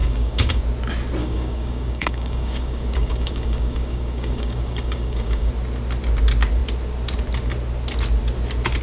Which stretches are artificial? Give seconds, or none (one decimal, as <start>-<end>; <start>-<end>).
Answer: 0.0-0.6; 1.2-5.5